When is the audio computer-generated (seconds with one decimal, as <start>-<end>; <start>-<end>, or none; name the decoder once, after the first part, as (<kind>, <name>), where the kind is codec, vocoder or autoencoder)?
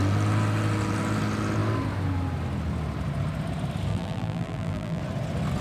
3.9-5.0 (vocoder, BigVGAN v2)